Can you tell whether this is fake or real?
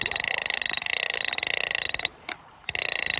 real